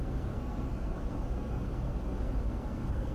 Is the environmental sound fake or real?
fake